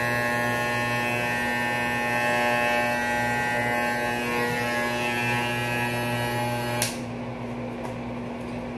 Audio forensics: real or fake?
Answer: real